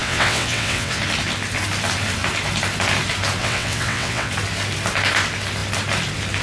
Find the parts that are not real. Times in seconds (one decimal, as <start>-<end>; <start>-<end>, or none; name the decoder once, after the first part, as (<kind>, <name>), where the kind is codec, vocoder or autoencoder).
0.0-1.0 (vocoder, WaveNeXt); 3.4-4.3